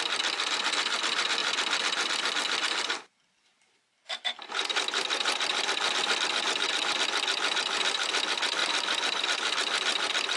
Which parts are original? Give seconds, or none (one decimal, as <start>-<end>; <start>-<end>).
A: 0.0-5.5; 6.1-10.4